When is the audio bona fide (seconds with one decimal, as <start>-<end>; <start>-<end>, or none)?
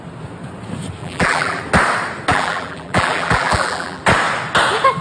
0.0-1.0; 1.6-2.3; 4.0-5.0